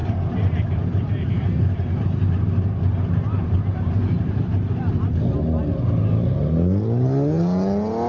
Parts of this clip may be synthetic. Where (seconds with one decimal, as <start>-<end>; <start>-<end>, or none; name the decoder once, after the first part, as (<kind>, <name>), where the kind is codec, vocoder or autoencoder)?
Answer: 0.0-4.9 (vocoder, BigVGAN v2)